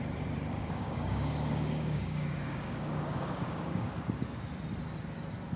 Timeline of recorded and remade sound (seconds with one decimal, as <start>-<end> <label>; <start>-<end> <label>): 0.0-0.6 recorded; 0.6-3.9 remade; 3.9-5.6 recorded